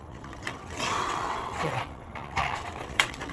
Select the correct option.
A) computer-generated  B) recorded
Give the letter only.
A